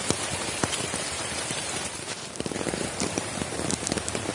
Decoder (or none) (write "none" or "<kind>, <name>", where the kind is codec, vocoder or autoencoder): vocoder, BigVGAN v2